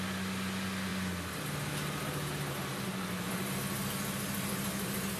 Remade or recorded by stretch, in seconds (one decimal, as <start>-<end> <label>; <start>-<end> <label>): 0.0-5.2 recorded